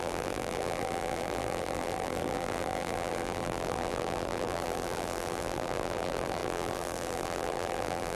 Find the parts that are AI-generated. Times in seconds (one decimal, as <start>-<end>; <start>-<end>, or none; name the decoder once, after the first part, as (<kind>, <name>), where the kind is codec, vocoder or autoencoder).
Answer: 0.0-8.2 (vocoder, BigVGAN v2)